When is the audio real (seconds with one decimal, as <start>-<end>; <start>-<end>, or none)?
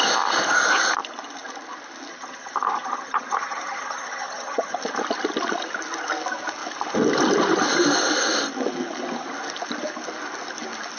0.0-2.1; 4.8-11.0